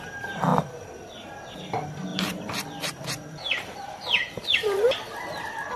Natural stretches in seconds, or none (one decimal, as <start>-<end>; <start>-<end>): 0.0-2.1